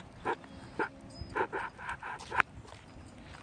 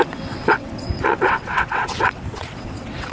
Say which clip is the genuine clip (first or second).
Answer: first